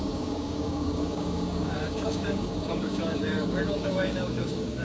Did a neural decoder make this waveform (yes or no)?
yes